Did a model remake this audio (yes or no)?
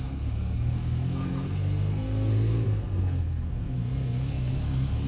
yes